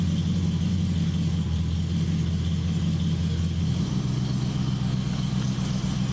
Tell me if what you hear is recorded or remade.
recorded